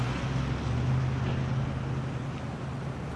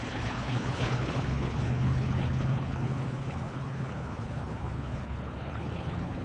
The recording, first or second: first